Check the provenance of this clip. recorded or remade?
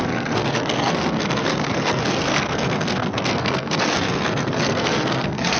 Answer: remade